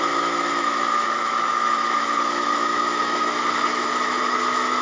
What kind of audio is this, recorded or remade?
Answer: remade